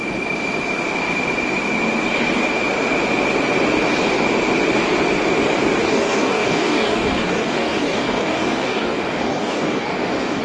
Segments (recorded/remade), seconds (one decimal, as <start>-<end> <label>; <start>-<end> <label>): 0.0-5.8 recorded; 5.8-10.4 remade